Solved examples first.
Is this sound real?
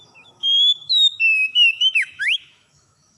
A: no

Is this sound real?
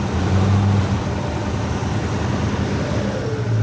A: yes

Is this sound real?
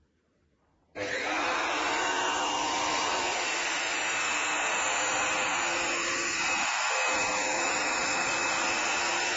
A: no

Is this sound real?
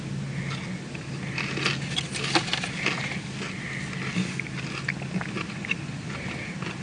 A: yes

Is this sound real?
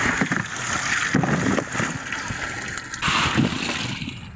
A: yes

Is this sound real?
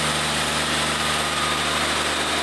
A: yes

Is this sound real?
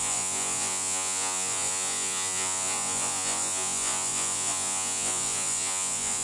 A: no